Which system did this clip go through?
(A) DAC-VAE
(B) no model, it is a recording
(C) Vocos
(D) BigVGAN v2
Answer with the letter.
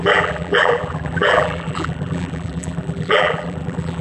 D